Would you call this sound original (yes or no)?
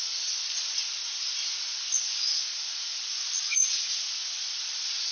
yes